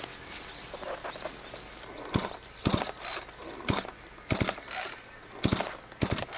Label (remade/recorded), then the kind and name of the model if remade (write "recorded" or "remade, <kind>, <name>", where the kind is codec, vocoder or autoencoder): recorded